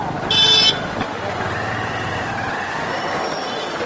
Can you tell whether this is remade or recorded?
recorded